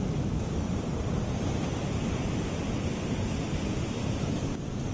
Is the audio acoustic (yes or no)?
no